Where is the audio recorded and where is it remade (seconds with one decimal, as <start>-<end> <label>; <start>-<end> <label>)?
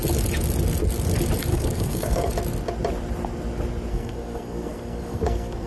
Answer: 0.0-1.5 recorded; 1.5-2.3 remade; 2.3-3.9 recorded; 3.9-5.7 remade